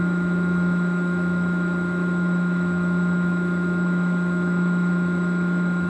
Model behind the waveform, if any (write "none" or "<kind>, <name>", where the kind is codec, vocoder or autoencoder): autoencoder, DAC-VAE